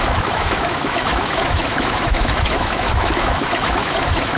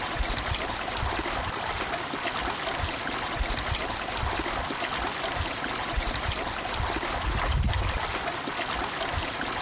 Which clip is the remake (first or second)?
first